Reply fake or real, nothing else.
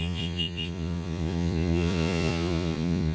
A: fake